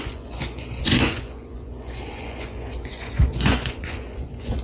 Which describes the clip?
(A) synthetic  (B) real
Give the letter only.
A